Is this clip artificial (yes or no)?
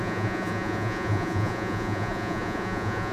yes